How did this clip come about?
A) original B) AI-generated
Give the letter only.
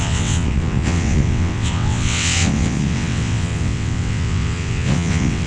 B